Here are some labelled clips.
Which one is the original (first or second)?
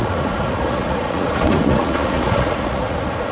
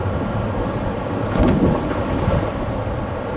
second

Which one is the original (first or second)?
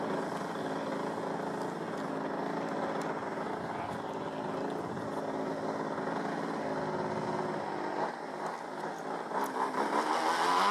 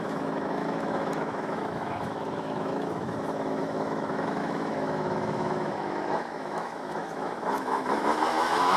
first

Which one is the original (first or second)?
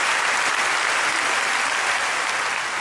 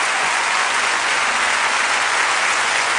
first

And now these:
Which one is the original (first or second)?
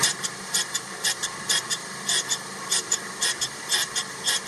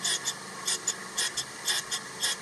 second